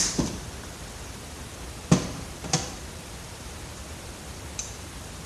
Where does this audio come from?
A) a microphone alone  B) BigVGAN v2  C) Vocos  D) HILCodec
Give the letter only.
B